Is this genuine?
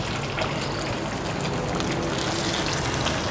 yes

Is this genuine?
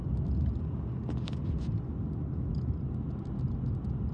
yes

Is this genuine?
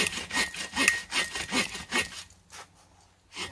yes